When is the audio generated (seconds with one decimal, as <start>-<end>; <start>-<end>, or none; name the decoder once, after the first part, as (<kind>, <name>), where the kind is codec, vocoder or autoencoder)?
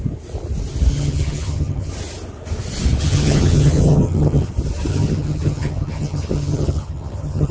0.9-1.9 (vocoder, HiFi-GAN); 3.0-4.5; 4.9-7.5